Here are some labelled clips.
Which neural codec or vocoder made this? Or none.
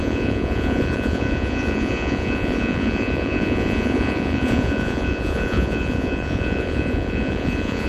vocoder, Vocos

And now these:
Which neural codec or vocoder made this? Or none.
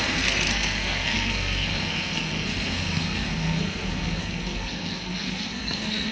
codec, SNAC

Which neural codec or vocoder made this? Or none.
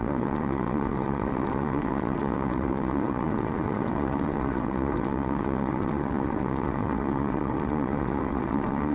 vocoder, WaveNeXt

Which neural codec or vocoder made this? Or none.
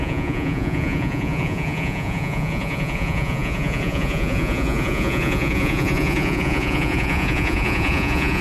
vocoder, Vocos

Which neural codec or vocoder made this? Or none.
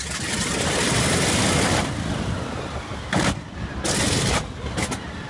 none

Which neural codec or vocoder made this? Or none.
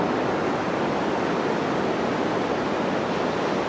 none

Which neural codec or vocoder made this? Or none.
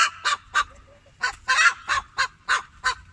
vocoder, BigVGAN v2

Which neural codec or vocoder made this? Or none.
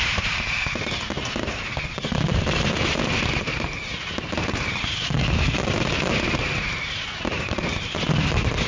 vocoder, BigVGAN v2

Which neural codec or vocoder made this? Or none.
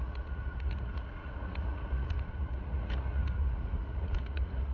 vocoder, Vocos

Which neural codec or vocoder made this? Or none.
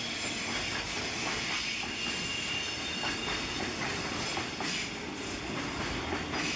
none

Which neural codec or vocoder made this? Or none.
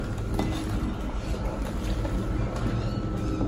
none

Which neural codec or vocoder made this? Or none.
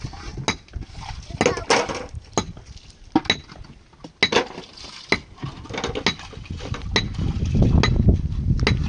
none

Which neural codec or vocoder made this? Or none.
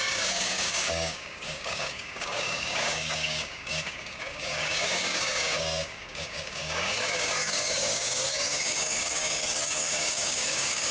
codec, DAC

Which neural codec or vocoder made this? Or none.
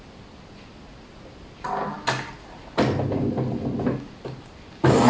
none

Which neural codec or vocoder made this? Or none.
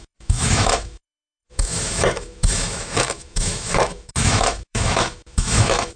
autoencoder, DAC-VAE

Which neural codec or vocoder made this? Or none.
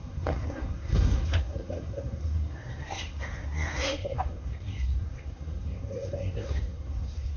codec, SNAC